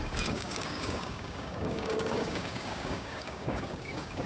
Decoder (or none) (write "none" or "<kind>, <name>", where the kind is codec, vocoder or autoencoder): codec, DAC